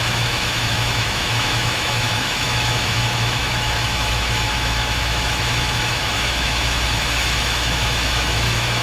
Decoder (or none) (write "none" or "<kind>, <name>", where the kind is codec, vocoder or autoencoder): autoencoder, DAC-VAE